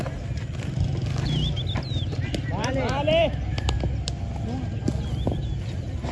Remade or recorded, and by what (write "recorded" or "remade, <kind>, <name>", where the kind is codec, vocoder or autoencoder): recorded